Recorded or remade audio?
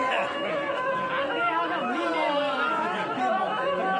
recorded